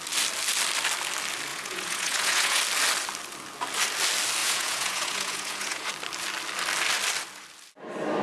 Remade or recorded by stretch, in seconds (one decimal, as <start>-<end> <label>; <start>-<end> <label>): 0.0-1.5 recorded; 1.5-2.6 remade; 2.6-4.4 recorded; 4.4-5.9 remade; 5.9-8.2 recorded